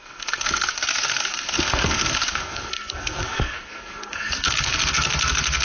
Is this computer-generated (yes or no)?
yes